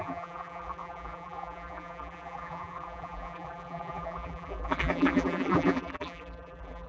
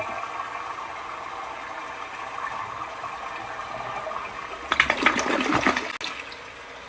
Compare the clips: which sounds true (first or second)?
second